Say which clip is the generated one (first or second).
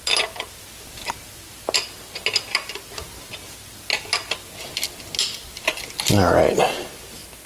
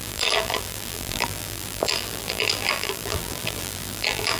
second